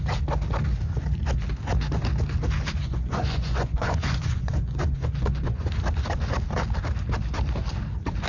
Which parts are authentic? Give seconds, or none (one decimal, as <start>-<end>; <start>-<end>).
0.0-2.8; 5.7-8.3